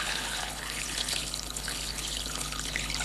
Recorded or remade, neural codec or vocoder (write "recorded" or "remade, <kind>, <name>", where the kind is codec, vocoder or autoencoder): remade, codec, HILCodec